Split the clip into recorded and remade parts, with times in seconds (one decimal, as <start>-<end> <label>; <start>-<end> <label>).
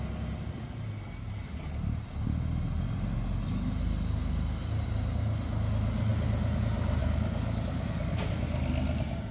0.0-7.0 recorded; 7.0-8.3 remade; 8.3-9.3 recorded